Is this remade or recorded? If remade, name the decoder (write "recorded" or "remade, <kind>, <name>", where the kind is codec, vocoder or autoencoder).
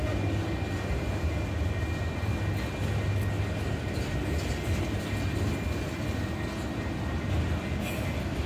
recorded